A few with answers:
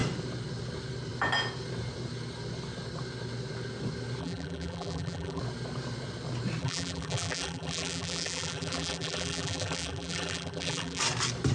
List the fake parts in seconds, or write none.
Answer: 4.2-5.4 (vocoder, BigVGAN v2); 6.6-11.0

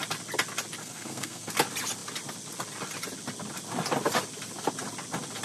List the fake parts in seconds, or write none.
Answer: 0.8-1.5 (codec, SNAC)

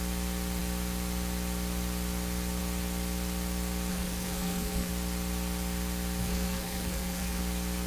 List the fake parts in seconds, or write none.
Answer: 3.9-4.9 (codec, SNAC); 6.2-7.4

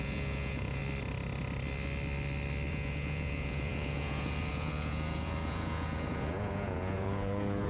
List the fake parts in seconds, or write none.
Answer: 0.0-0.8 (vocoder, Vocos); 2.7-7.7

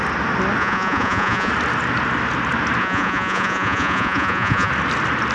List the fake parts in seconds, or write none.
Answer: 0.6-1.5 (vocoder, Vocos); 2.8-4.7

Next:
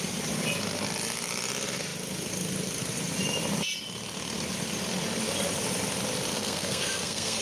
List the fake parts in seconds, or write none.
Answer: 6.3-7.4 (codec, SNAC)